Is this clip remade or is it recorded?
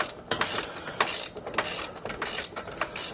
recorded